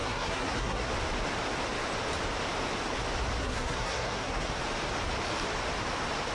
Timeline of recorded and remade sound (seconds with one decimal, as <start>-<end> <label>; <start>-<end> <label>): 0.0-0.9 remade; 0.9-3.4 recorded; 3.4-4.6 remade; 4.6-6.3 recorded